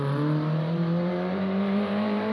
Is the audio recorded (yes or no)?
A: no